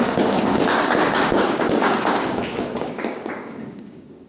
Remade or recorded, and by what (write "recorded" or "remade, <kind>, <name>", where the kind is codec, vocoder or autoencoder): remade, codec, DAC